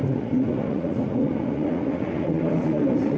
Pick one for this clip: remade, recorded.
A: remade